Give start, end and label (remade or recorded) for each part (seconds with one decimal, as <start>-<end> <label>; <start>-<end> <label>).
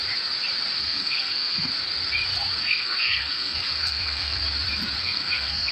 0.0-0.8 recorded; 0.8-1.7 remade; 1.7-2.6 recorded; 2.6-4.4 remade; 4.4-5.0 recorded; 5.0-5.7 remade